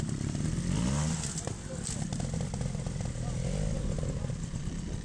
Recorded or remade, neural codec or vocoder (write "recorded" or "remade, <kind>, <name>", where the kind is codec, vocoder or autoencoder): recorded